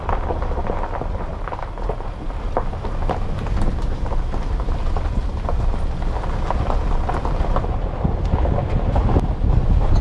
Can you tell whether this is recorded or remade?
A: recorded